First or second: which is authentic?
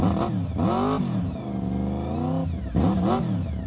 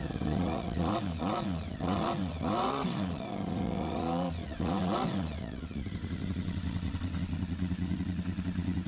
first